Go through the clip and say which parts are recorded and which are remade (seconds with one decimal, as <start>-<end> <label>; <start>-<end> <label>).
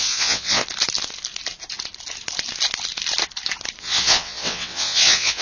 0.0-0.6 remade; 0.6-3.8 recorded; 3.8-5.4 remade